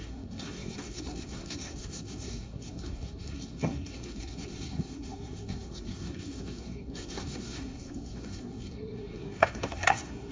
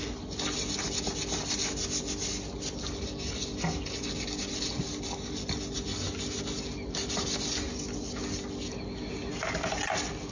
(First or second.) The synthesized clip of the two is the first